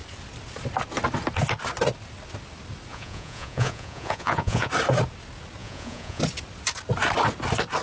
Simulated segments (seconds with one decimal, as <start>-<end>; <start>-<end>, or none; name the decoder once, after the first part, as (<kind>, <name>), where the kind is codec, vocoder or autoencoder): 2.9-4.7 (vocoder, Vocos); 5.6-6.2